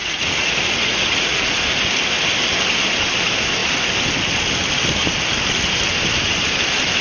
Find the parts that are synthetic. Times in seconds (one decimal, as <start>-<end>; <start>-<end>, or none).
0.0-1.6